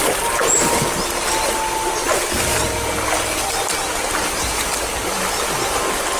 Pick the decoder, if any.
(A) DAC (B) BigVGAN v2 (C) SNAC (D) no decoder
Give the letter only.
D